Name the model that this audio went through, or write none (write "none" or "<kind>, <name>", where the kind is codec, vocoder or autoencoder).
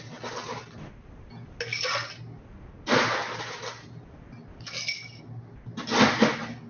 none